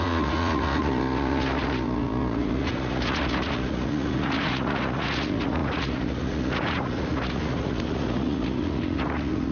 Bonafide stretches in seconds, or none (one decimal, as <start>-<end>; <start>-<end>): none